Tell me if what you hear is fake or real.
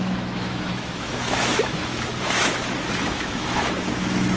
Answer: fake